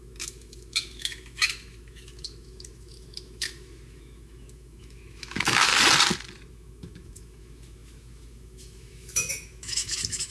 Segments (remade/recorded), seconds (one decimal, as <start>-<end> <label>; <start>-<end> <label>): 0.0-5.7 remade; 5.7-6.5 recorded; 6.5-10.3 remade